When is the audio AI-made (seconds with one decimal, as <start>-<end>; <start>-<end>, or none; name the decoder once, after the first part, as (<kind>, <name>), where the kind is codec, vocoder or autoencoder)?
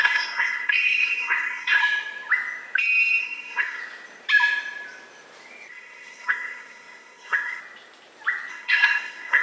0.0-1.8 (codec, SNAC); 3.2-3.8; 5.7-7.6; 8.5-9.4